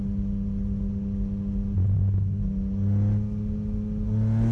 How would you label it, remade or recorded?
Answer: recorded